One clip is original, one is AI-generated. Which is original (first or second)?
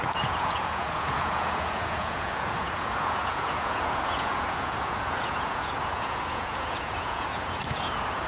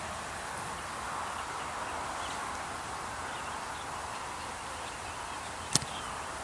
second